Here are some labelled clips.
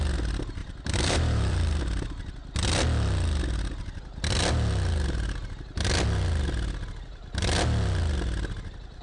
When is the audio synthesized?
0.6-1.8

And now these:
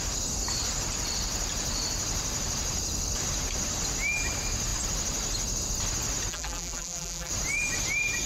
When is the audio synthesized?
6.3-7.3